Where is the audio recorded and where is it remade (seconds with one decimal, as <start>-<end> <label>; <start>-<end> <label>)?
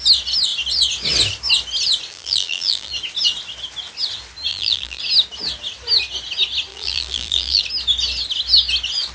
0.0-2.1 recorded; 2.1-2.9 remade; 2.9-4.5 recorded; 4.5-5.0 remade; 5.0-6.7 recorded; 6.7-7.6 remade; 7.6-9.1 recorded